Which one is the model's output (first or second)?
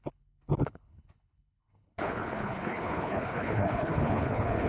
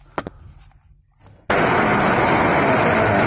first